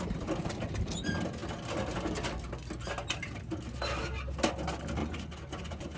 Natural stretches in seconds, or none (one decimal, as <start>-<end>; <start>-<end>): 0.0-5.0